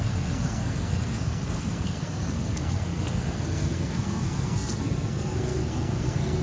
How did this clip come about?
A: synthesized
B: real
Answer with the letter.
A